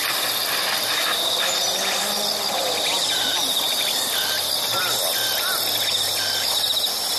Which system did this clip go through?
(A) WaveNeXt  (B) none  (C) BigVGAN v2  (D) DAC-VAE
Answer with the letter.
B